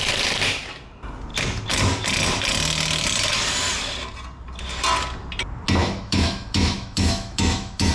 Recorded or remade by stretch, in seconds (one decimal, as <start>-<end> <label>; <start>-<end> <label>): 0.0-5.8 recorded; 5.8-7.9 remade